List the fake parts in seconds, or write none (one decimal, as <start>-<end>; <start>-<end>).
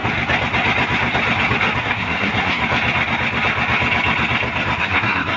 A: 1.8-2.6; 4.8-5.4